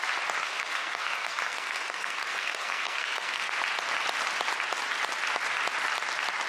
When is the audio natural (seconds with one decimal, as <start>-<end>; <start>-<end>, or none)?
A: 0.0-0.4; 3.5-6.5

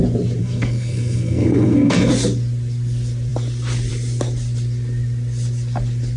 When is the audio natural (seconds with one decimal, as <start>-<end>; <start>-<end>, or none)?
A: 0.0-0.4; 2.1-6.2

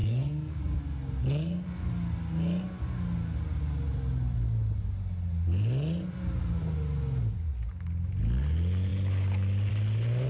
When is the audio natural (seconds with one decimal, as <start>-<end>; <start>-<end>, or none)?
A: 0.6-10.3